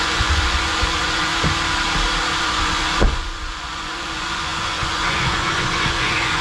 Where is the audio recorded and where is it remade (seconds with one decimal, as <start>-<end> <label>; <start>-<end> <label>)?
0.0-1.3 remade; 1.3-2.4 recorded; 2.4-6.4 remade